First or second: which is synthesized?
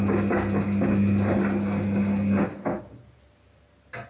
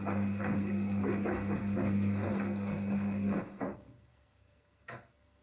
second